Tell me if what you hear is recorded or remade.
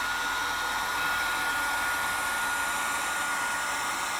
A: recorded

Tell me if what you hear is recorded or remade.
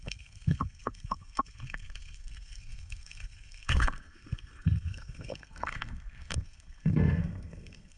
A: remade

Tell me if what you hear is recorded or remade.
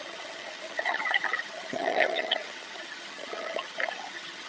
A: remade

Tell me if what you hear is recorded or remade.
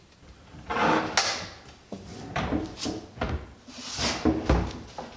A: recorded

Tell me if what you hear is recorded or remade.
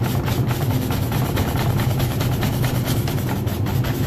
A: recorded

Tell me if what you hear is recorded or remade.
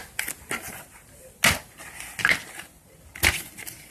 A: recorded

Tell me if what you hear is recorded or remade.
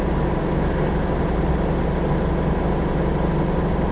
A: recorded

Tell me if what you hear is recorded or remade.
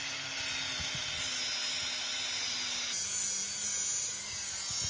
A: recorded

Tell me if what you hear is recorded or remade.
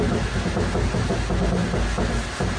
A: recorded